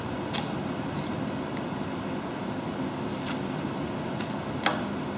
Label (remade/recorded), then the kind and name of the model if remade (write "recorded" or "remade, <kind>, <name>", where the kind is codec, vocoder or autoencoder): recorded